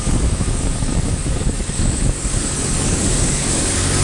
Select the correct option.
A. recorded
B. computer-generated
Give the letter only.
B